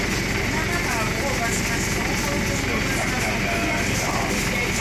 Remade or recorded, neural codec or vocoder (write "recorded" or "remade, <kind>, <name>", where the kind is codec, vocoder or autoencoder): recorded